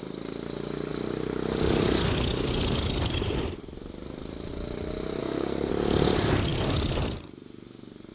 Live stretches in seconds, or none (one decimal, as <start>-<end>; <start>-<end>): 0.0-5.2; 5.7-8.1

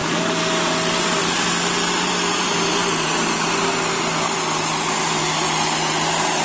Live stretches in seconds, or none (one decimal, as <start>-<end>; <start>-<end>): 0.0-6.4

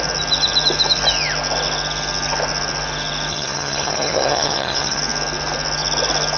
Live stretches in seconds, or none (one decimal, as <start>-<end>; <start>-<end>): 0.0-3.3; 5.0-6.4

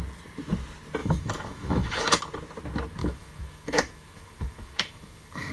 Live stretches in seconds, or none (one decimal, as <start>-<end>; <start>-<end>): 0.0-1.0; 2.2-3.0